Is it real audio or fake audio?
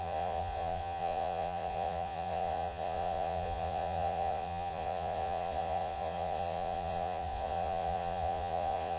fake